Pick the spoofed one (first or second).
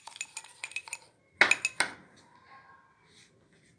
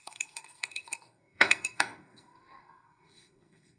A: second